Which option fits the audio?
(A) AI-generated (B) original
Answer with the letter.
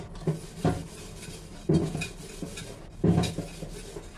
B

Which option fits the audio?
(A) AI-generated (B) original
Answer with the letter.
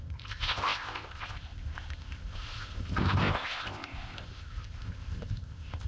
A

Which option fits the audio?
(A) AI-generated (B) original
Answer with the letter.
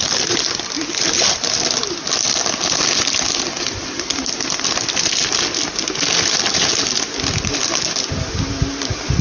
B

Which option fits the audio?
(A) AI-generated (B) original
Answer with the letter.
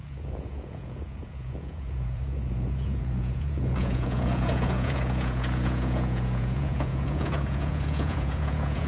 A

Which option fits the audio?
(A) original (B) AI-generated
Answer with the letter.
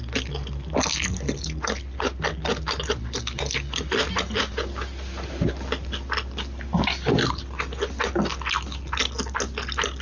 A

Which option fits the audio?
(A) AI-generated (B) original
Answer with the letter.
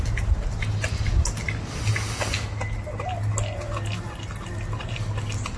B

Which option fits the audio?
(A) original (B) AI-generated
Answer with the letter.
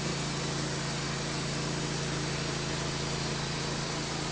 A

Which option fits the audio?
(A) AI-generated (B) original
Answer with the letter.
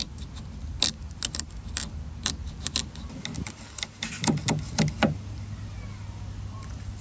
B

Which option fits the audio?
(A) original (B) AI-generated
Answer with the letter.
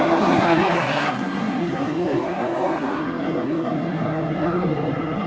B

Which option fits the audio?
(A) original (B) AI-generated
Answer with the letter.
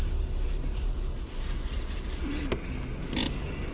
A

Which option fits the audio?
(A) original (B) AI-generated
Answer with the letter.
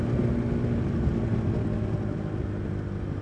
A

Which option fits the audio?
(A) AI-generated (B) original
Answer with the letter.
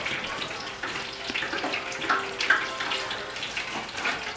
B